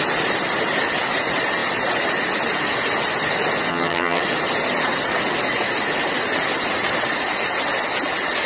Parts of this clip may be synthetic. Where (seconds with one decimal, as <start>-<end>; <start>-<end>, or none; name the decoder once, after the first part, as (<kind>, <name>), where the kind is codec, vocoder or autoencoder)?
3.7-4.2 (vocoder, HiFi-GAN)